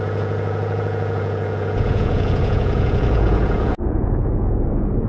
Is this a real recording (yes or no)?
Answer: no